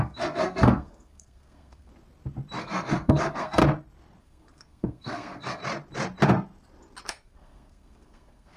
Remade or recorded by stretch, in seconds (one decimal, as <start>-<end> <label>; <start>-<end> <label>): 0.0-1.9 remade; 1.9-2.6 recorded; 2.6-3.6 remade; 3.6-4.2 recorded; 4.2-5.6 remade; 5.6-7.1 recorded; 7.1-8.6 remade